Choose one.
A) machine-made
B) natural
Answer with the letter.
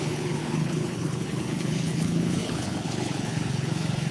A